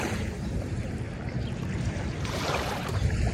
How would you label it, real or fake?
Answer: fake